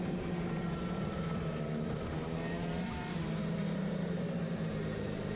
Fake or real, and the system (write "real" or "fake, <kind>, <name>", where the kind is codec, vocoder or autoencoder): fake, vocoder, BigVGAN v2